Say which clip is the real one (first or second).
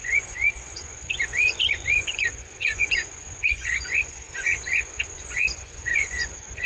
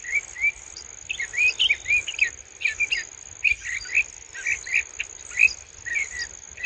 second